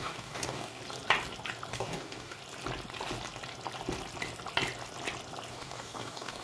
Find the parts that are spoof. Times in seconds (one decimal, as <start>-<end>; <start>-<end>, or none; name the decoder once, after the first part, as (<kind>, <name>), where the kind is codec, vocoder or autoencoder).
0.0-0.8 (codec, DAC); 1.7-2.4; 5.5-6.4